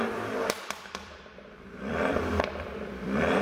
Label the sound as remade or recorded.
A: remade